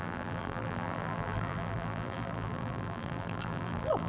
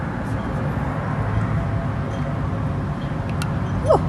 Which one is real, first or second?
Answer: second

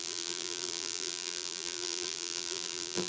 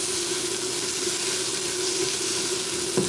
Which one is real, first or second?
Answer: second